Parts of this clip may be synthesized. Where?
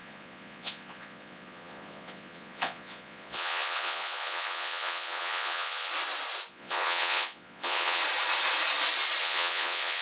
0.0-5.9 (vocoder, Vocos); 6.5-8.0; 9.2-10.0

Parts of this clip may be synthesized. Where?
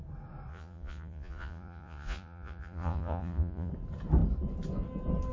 0.5-3.7 (vocoder, Vocos)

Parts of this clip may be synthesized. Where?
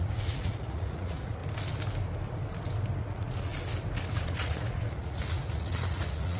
0.0-1.4 (vocoder, Vocos); 3.0-3.5; 4.1-6.4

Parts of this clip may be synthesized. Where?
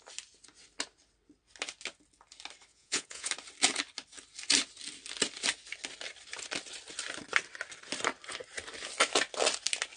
2.7-3.3 (vocoder, Vocos)